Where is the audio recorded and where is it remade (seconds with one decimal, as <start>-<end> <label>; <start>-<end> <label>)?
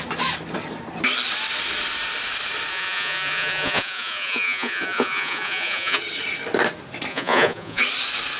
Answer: 0.0-2.7 recorded; 2.7-6.0 remade; 6.0-7.1 recorded; 7.1-7.8 remade; 7.8-8.4 recorded